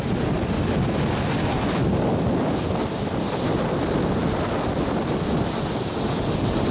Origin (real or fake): real